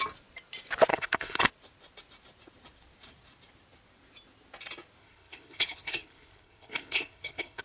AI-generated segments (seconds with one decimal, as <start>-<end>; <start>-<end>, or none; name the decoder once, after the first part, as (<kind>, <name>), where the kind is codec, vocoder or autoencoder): 0.9-1.5 (codec, HILCodec); 5.0-7.6